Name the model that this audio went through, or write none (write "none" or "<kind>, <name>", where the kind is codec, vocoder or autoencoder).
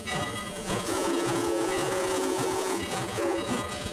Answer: vocoder, Vocos